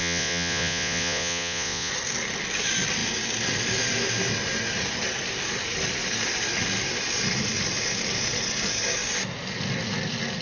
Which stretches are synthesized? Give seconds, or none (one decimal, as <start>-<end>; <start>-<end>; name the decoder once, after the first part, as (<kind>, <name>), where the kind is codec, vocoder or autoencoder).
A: 0.0-1.9 (vocoder, Vocos)